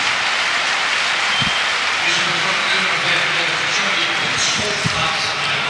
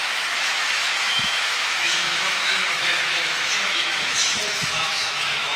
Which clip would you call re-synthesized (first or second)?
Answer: second